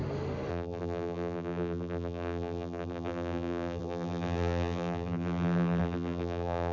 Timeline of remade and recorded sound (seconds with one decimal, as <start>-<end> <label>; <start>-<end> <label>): 0.0-0.5 recorded; 0.5-6.7 remade